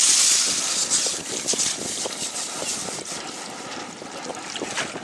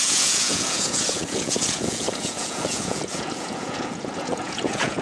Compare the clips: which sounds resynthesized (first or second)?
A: second